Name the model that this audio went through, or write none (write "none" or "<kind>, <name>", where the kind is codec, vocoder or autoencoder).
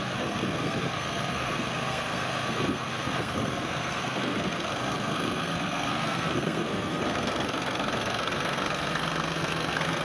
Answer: codec, SNAC